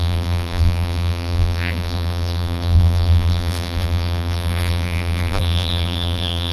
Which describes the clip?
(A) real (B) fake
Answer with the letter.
B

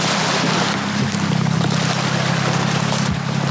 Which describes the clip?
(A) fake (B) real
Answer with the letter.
B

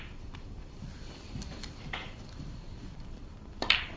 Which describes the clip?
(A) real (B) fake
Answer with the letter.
B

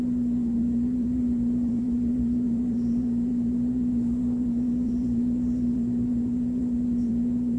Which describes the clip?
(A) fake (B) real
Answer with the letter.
A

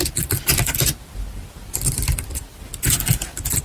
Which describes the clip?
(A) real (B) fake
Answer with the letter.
A